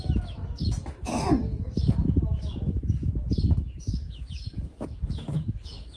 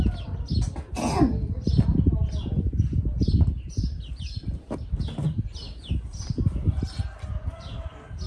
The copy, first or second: first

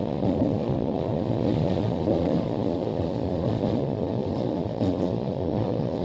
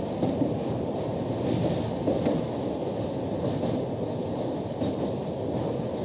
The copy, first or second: first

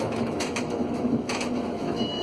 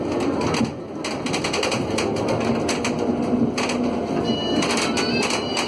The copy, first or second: first